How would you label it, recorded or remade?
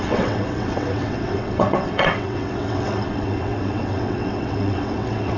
remade